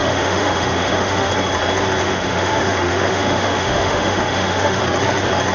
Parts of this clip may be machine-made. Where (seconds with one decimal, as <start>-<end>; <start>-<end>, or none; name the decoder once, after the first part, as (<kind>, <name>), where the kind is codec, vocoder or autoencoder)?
0.0-1.3 (autoencoder, DAC-VAE); 2.0-4.8